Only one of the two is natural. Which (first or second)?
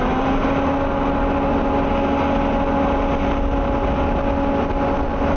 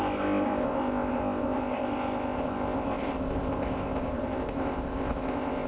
first